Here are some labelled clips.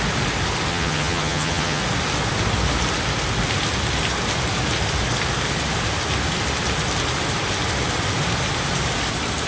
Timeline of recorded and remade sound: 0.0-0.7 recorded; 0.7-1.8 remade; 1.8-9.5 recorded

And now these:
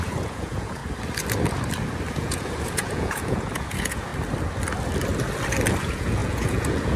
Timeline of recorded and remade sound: 0.0-0.8 remade; 0.8-2.1 recorded; 2.1-4.1 remade; 4.1-5.8 recorded; 5.8-7.0 remade

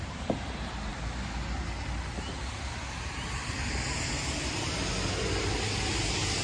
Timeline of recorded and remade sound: 0.0-0.9 remade; 0.9-4.3 recorded; 4.3-4.8 remade; 4.8-5.9 recorded; 5.9-6.4 remade